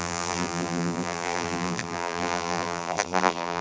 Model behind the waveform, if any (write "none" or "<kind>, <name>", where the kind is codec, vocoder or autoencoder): vocoder, BigVGAN v2